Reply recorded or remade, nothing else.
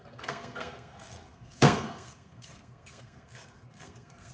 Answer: remade